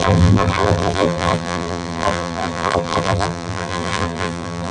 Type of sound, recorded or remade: remade